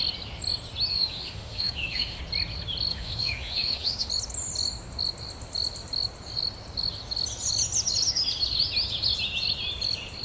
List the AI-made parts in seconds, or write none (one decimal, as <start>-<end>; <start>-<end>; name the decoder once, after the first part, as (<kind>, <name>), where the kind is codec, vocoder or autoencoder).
0.9-2.2 (autoencoder, DAC-VAE); 2.9-4.1

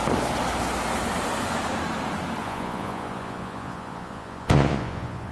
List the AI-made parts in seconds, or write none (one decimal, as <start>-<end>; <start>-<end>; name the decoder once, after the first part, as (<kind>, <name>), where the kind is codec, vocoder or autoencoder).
2.4-5.3 (vocoder, Vocos)

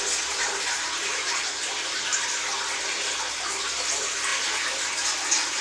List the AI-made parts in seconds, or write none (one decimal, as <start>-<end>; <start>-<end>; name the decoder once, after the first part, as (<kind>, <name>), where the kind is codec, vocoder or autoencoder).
none

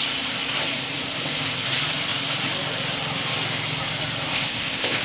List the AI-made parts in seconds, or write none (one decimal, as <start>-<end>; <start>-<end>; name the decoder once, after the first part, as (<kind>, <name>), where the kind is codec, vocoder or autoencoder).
4.3-5.0 (codec, ZipCodec)

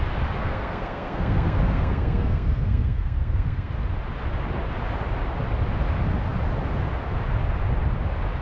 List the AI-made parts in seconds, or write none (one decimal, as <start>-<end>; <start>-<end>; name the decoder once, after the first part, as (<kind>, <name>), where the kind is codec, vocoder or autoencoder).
0.4-3.7 (codec, SNAC)